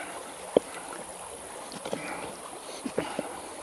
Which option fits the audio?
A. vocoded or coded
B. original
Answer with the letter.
B